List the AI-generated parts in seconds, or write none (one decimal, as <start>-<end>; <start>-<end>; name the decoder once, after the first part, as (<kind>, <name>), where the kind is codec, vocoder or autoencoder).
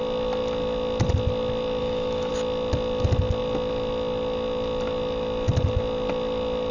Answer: 1.8-2.3 (autoencoder, DAC-VAE)